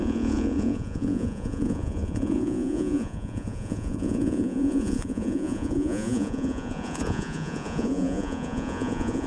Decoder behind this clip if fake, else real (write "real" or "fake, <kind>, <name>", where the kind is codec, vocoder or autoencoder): fake, vocoder, Vocos